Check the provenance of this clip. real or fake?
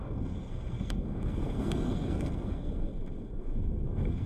fake